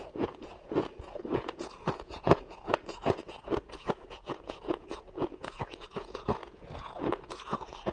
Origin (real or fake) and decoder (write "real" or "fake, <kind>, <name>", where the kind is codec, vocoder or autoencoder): fake, vocoder, Vocos